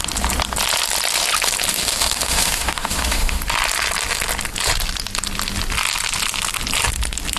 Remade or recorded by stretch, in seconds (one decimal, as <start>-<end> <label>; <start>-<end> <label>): 0.0-1.7 recorded; 1.7-3.4 remade; 3.4-7.4 recorded